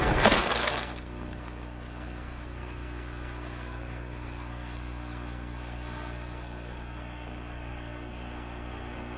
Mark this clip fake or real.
fake